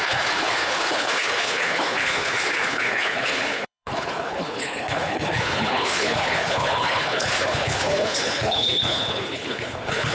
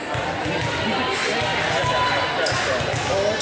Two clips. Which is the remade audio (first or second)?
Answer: first